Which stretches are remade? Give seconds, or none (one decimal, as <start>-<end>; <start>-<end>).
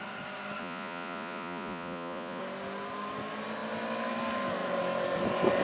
0.6-2.4